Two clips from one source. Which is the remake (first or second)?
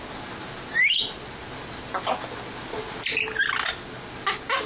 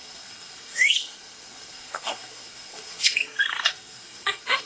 second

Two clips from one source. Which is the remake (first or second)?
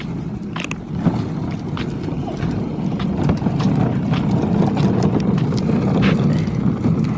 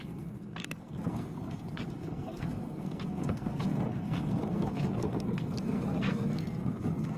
second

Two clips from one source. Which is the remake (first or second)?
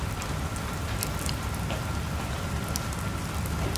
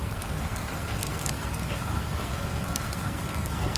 second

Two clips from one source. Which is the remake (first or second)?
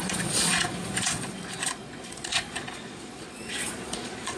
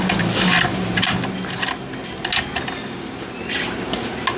first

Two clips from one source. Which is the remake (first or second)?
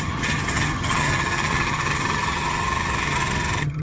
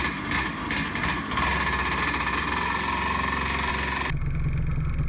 first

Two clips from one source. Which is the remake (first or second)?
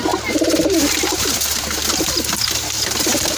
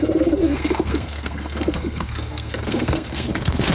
second